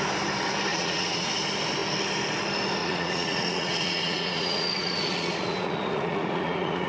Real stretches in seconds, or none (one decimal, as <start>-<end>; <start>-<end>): 0.0-0.7; 1.3-2.8